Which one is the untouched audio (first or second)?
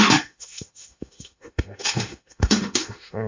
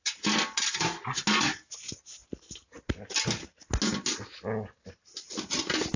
second